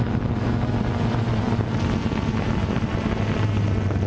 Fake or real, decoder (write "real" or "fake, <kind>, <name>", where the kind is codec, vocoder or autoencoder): real